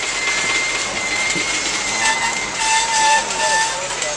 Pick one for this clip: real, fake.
real